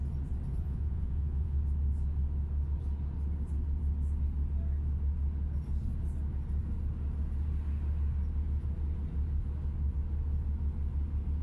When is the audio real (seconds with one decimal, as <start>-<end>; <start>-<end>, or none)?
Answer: 0.0-0.5; 1.6-11.4